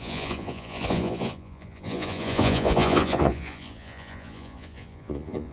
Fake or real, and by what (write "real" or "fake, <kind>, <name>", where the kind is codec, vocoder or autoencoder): fake, vocoder, Vocos